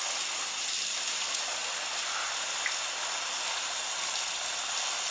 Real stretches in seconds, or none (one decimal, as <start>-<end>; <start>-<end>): 0.0-5.1